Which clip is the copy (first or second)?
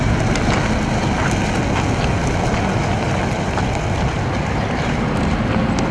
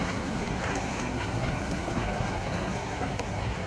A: second